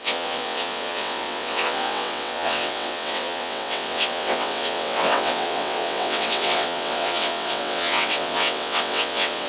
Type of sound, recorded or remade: remade